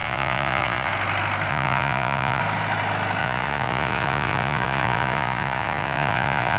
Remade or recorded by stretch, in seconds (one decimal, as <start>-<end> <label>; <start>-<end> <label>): 0.0-0.9 remade; 0.9-1.5 recorded; 1.5-2.4 remade; 2.4-3.2 recorded; 3.2-6.6 remade